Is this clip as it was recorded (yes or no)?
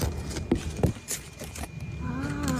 yes